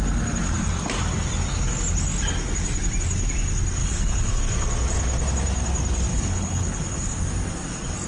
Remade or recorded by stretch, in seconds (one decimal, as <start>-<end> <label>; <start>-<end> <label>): 0.0-3.8 recorded; 3.8-4.4 remade; 4.4-6.1 recorded; 6.1-7.2 remade; 7.2-8.1 recorded

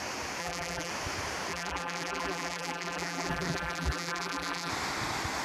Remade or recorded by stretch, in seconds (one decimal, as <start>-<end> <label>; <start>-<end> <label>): 0.0-0.4 recorded; 0.4-0.9 remade; 0.9-1.5 recorded; 1.5-4.7 remade; 4.7-5.4 recorded

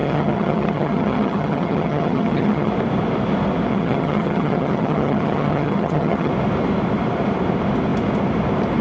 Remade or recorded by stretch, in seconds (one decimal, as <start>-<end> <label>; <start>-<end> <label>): 0.0-2.7 remade; 2.7-3.7 recorded; 3.7-6.3 remade; 6.3-8.8 recorded

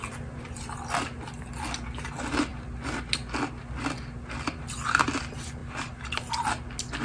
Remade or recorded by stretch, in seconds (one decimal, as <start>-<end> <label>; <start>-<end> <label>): 0.0-7.0 recorded

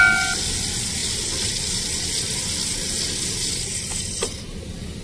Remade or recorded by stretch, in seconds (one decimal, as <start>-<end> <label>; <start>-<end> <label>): 0.0-5.0 recorded

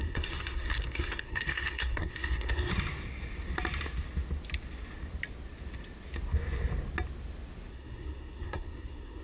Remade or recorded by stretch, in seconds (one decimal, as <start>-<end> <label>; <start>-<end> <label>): 0.0-2.7 remade; 2.7-7.7 recorded; 7.7-9.2 remade

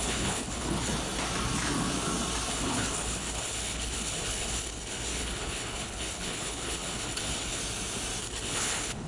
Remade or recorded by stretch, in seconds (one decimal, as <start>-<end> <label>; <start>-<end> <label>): 0.0-0.9 remade; 0.9-2.5 recorded; 2.5-7.6 remade; 7.6-8.2 recorded; 8.2-9.1 remade